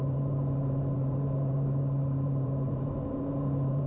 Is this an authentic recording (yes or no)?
no